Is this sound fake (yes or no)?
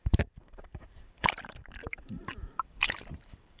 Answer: yes